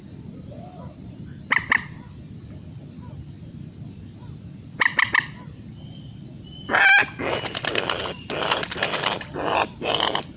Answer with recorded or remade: recorded